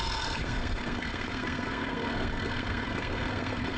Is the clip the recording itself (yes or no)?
no